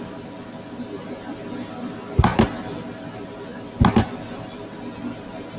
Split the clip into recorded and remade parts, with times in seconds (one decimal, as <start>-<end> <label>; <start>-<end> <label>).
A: 0.0-5.6 recorded